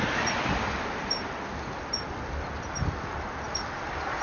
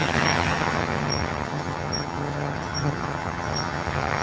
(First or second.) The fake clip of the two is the second